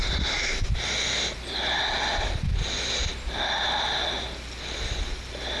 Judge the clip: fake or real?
real